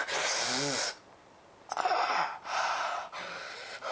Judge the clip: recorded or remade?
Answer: recorded